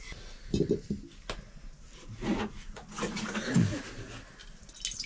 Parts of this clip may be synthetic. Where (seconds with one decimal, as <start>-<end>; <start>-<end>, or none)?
2.3-3.8